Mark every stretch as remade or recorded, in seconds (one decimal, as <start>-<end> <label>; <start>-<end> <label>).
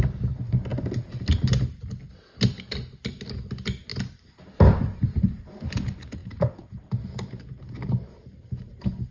0.0-9.1 recorded